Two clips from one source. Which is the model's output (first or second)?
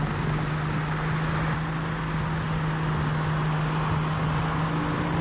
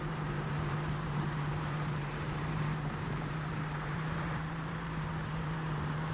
second